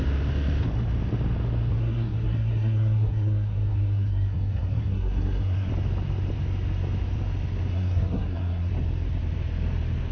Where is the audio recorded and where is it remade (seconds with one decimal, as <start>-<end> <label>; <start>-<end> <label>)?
0.0-1.8 recorded; 1.8-5.7 remade; 5.7-7.7 recorded; 7.7-8.7 remade; 8.7-10.1 recorded